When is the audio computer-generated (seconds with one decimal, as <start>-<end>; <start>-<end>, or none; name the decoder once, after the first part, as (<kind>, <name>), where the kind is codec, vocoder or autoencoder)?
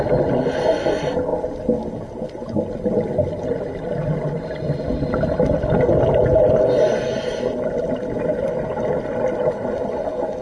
none